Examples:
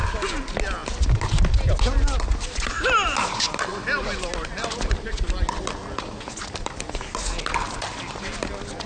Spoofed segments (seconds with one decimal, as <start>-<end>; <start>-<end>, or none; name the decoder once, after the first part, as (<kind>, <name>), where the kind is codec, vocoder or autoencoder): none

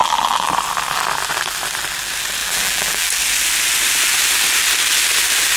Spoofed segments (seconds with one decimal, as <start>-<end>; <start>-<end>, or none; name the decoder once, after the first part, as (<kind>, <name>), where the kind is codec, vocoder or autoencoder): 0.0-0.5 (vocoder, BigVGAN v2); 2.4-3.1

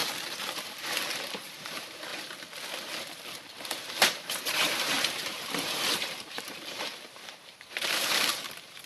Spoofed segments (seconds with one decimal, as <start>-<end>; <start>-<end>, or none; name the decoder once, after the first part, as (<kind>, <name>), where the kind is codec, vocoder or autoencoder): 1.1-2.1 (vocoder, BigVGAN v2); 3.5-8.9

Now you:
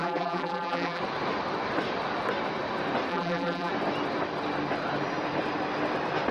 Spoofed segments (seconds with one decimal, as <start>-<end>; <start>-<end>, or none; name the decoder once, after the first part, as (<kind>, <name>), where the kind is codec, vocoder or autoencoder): 0.0-1.0 (vocoder, BigVGAN v2); 3.1-3.7